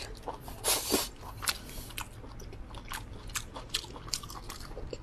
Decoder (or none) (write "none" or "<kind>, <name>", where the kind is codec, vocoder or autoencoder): none